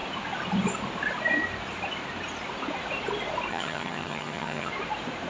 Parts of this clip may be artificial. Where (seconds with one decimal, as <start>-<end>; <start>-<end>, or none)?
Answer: 3.5-4.7

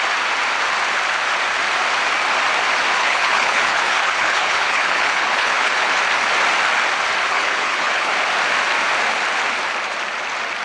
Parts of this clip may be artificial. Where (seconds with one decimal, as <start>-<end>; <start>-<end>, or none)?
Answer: 3.0-6.0; 7.3-8.1

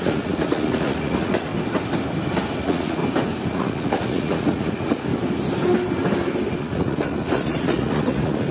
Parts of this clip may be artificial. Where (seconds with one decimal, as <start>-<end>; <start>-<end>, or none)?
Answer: 0.0-1.5; 2.6-3.0; 3.5-5.1; 6.6-8.5